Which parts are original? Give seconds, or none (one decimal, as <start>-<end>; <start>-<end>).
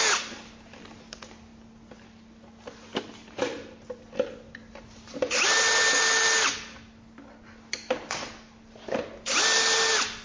0.0-10.2